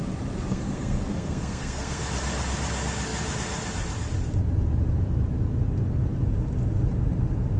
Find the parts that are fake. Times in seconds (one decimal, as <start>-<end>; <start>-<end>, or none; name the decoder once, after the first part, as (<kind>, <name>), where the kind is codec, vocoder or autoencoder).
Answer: 0.5-2.0 (codec, SNAC)